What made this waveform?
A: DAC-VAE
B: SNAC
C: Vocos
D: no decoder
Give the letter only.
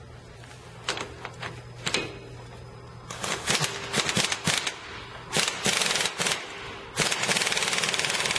D